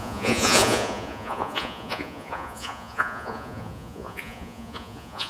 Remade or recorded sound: remade